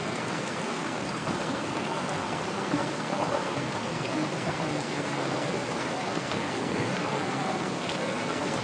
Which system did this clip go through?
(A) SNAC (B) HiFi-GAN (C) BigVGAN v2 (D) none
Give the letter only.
A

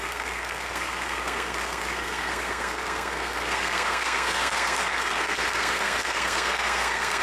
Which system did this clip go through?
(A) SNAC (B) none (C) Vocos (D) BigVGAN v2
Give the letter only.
A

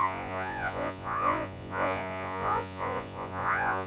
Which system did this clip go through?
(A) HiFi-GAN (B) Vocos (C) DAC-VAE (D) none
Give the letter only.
B